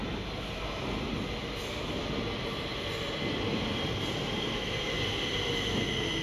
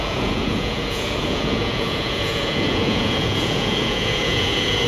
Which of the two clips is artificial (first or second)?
second